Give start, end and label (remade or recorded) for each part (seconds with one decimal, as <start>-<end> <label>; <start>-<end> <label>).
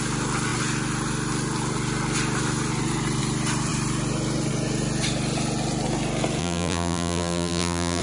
0.0-6.4 recorded; 6.4-8.0 remade